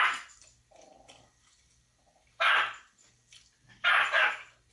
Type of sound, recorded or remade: remade